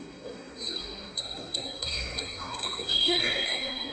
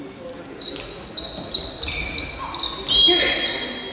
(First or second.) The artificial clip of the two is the first